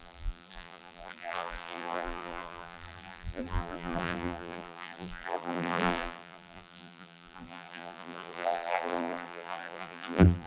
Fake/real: fake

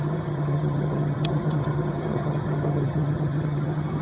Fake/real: fake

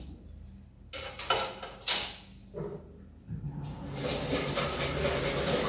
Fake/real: real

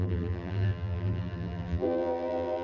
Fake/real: fake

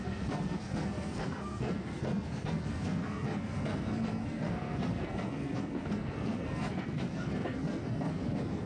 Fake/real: fake